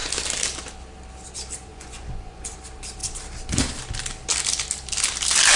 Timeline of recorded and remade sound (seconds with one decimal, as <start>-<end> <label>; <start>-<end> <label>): 0.0-1.7 recorded; 1.7-2.5 remade; 2.5-5.6 recorded